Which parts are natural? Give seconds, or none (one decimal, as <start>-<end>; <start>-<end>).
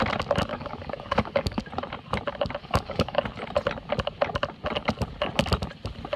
0.0-0.5; 1.6-2.6; 3.2-6.2